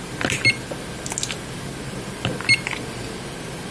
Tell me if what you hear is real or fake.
real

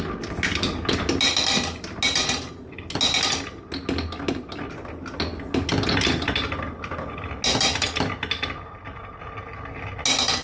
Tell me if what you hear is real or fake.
real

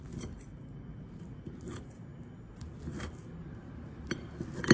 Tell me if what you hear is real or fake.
real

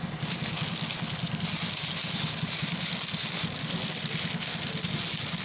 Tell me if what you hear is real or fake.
real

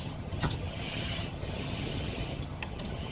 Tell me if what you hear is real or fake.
fake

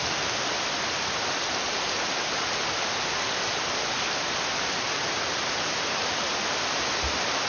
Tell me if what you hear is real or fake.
real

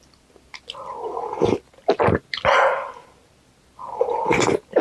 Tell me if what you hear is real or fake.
real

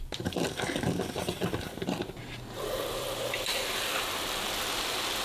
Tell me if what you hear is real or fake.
fake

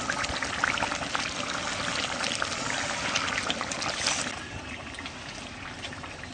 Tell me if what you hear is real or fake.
real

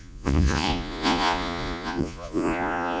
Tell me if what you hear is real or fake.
fake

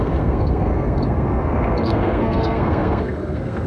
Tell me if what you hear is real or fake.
fake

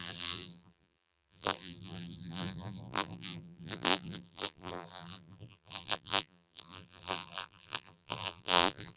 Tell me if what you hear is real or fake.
fake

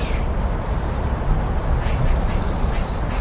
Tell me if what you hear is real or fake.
real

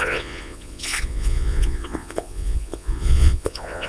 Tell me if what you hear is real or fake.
fake